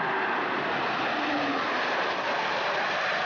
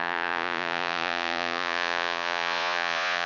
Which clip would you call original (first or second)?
first